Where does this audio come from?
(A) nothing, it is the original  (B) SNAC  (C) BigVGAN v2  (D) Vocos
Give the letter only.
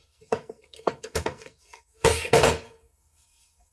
B